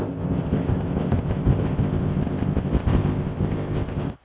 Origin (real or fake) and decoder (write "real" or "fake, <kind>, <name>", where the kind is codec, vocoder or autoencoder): fake, codec, ZipCodec